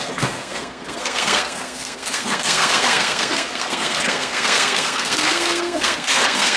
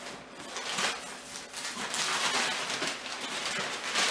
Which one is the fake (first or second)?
first